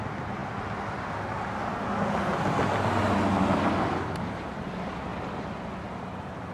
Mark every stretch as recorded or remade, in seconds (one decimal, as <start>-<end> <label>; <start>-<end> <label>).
0.0-6.5 recorded